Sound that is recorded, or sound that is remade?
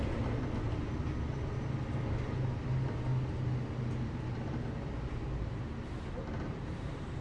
recorded